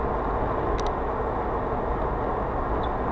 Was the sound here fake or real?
real